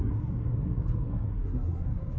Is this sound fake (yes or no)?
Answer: yes